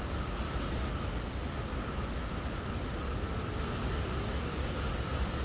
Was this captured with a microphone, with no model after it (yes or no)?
yes